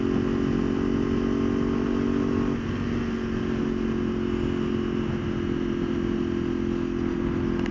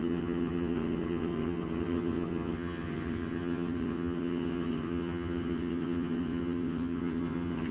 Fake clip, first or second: second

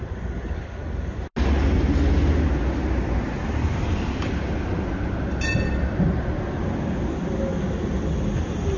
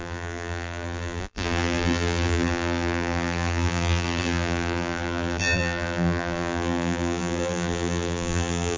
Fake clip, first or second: second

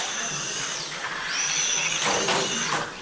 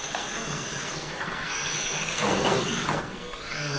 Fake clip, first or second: second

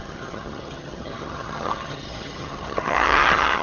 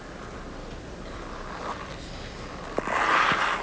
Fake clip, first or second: first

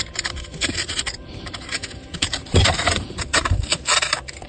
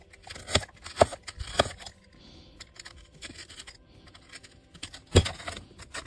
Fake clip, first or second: first